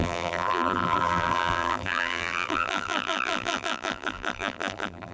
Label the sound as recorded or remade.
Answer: remade